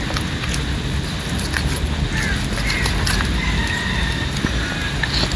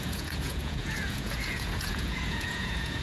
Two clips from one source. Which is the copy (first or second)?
second